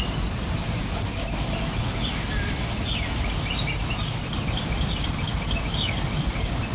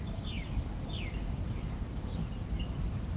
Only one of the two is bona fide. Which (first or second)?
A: first